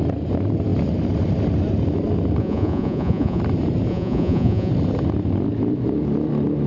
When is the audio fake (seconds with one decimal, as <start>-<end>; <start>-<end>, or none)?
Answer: 2.4-3.4; 3.9-4.7